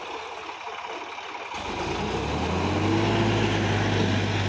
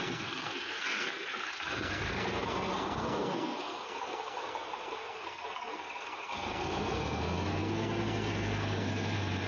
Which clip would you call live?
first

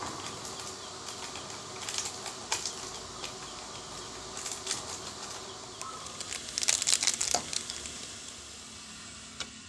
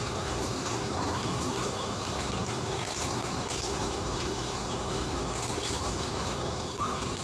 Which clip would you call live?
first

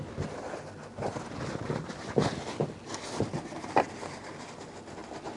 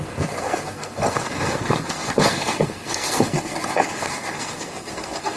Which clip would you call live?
first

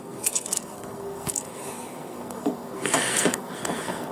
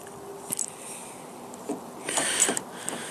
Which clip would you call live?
second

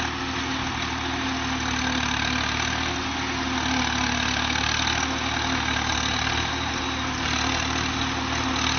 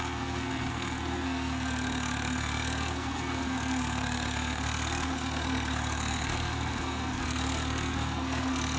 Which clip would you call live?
first